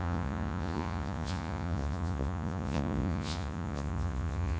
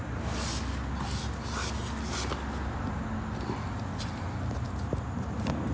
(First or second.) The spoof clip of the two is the first